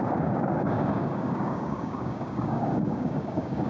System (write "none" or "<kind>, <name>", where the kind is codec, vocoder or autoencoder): codec, DAC